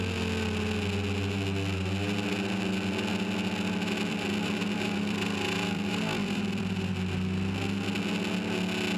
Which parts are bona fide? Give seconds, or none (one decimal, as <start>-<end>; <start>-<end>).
0.0-4.1; 6.9-9.0